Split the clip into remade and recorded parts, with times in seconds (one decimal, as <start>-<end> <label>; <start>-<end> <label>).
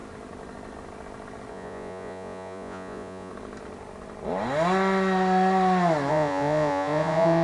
0.0-1.5 recorded; 1.5-3.3 remade; 3.3-6.1 recorded; 6.1-7.4 remade